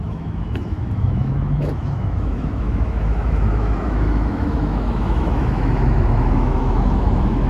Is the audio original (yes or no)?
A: no